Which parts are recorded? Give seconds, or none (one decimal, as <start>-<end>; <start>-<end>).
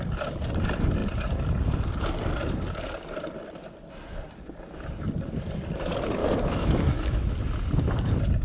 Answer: 0.0-6.2; 7.3-8.4